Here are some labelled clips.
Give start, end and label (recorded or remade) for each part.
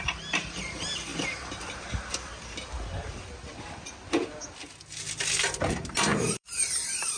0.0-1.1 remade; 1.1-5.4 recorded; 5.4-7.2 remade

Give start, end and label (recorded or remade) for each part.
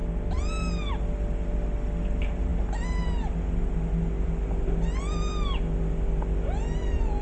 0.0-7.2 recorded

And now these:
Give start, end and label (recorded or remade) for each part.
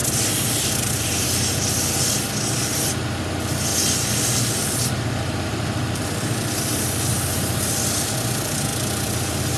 0.0-1.6 remade; 1.6-3.7 recorded; 3.7-8.1 remade; 8.1-8.7 recorded; 8.7-9.6 remade